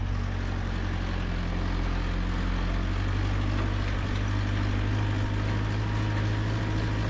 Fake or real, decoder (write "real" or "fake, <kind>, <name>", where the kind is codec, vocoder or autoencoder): real